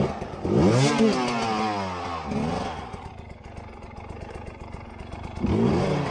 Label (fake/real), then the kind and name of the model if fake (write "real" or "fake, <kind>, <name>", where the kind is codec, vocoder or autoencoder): real